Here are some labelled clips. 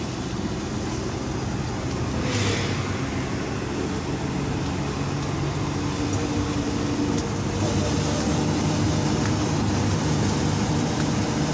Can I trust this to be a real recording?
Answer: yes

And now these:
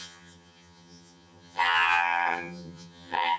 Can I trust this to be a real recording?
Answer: no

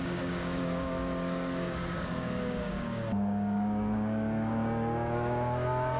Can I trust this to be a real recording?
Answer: no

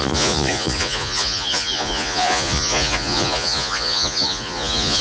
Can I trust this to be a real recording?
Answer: no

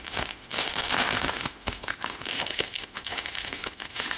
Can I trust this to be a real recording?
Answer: no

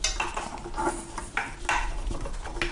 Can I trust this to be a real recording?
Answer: yes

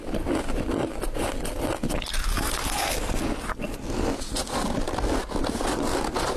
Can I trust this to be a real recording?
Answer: yes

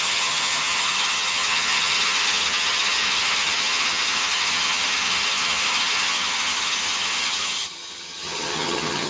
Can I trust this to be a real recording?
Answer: no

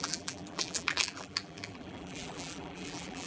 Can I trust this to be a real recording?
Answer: no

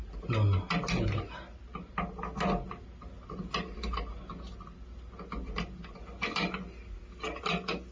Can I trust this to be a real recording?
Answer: yes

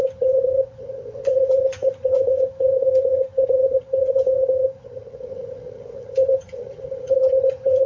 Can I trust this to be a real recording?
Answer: no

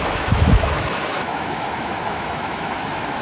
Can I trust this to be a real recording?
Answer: no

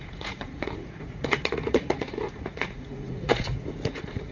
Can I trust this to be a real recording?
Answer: no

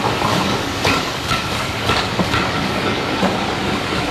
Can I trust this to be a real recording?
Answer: no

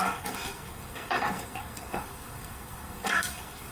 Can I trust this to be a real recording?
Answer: no